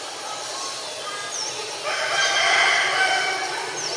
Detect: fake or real real